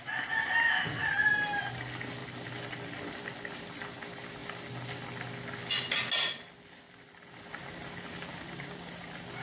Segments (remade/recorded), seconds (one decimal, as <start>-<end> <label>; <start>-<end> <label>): 0.0-9.4 recorded